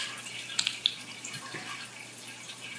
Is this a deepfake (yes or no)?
no